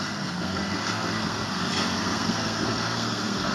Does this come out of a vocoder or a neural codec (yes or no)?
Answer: yes